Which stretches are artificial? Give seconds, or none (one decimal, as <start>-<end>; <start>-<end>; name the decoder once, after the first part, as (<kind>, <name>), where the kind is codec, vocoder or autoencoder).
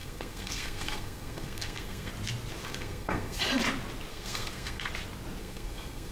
0.0-2.1 (codec, SNAC); 2.6-3.4; 4.1-4.9; 5.4-6.1